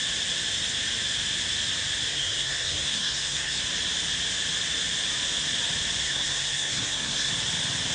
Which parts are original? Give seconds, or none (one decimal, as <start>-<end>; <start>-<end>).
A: 0.0-2.1; 3.6-6.0; 7.3-7.9